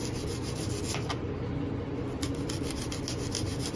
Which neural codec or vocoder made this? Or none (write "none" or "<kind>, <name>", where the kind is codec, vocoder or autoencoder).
none